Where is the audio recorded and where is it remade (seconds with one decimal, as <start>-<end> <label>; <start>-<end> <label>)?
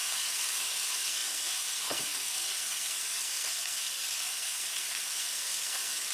0.0-6.1 remade